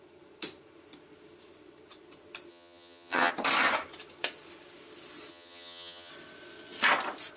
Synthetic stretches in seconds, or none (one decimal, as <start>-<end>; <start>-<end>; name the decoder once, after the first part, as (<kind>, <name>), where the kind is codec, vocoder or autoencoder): 2.5-3.3 (vocoder, HiFi-GAN); 5.3-6.1